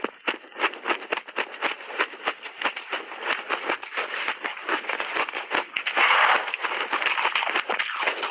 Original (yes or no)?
yes